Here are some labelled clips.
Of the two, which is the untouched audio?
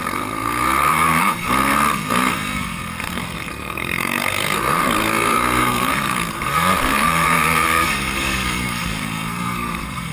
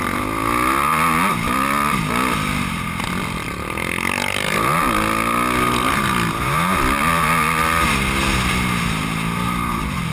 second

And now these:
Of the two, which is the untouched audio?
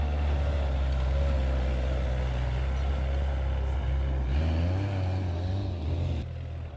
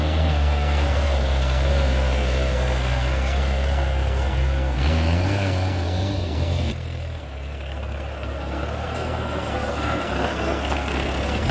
first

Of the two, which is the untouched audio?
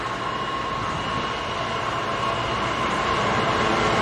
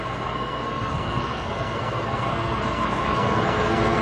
first